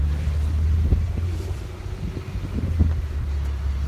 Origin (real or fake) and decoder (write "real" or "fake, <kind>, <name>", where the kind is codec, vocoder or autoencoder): real